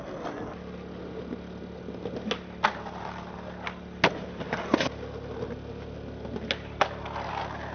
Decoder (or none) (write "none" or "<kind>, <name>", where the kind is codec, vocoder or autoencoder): none